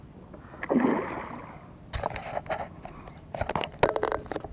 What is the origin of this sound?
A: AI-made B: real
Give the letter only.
B